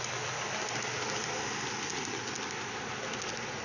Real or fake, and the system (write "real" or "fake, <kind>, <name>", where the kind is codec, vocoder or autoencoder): real